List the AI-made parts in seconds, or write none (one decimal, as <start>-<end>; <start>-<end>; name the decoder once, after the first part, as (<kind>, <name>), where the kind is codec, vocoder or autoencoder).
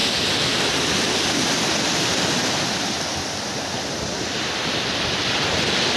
none